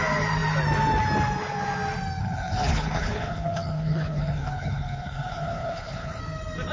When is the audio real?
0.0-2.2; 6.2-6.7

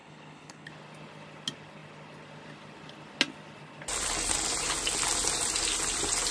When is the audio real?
0.7-6.3

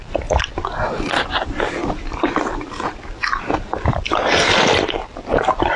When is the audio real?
0.0-5.8

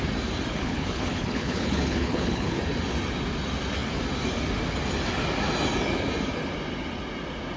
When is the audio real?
0.0-0.5; 2.6-7.6